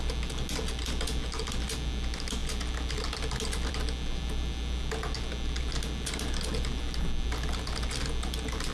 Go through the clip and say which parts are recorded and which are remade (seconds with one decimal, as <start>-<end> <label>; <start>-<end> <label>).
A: 0.0-8.7 recorded